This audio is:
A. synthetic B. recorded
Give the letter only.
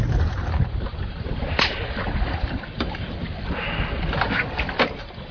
B